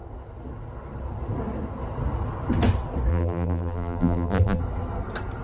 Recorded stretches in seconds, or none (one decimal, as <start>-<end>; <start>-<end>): 0.0-3.1; 4.6-5.4